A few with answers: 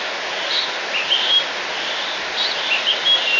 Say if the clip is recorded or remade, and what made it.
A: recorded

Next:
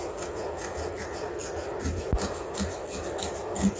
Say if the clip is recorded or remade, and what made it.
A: recorded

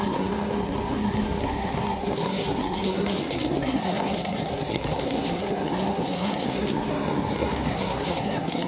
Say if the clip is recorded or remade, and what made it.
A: remade, codec, SNAC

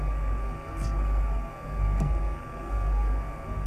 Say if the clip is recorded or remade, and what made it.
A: remade, codec, SNAC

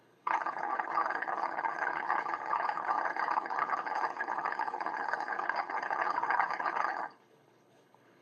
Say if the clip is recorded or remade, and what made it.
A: remade, codec, HILCodec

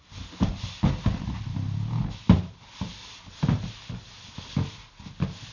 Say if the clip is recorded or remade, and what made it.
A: recorded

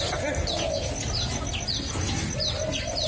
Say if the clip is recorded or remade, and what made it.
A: recorded